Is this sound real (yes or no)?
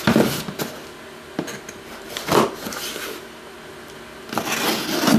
yes